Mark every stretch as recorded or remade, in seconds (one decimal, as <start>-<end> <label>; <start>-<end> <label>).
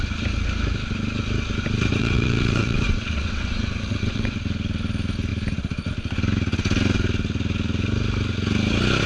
0.0-2.0 recorded; 2.0-4.3 remade; 4.3-9.1 recorded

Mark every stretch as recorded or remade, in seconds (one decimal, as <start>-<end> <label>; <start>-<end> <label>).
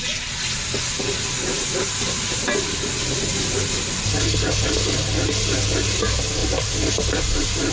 0.0-7.7 recorded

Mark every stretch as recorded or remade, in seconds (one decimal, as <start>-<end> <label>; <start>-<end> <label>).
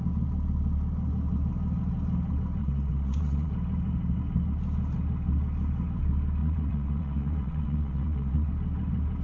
0.0-2.6 recorded; 2.6-3.5 remade; 3.5-6.4 recorded; 6.4-8.5 remade; 8.5-9.2 recorded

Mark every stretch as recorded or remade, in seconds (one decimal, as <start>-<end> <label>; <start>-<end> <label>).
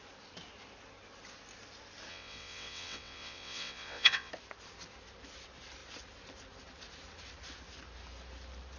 0.0-2.1 recorded; 2.1-4.3 remade; 4.3-8.8 recorded